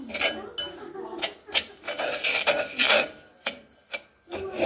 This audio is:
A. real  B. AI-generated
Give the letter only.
A